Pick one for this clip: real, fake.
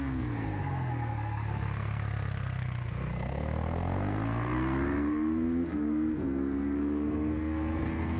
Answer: fake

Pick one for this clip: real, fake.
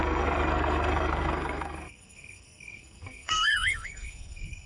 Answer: fake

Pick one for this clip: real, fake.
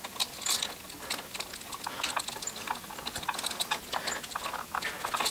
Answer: real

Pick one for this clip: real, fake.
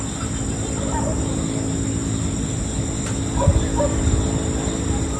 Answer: real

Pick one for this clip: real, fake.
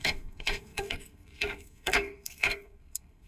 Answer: fake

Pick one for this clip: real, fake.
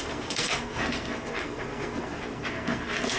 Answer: fake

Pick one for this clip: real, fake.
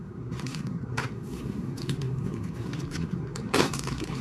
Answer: fake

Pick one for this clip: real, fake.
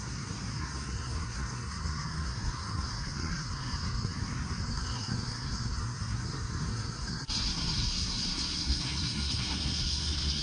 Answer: fake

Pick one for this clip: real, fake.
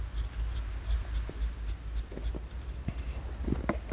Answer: real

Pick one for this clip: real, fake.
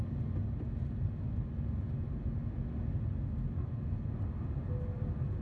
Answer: real